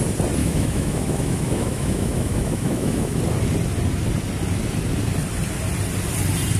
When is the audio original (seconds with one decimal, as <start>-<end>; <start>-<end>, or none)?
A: 0.0-0.4; 3.2-6.6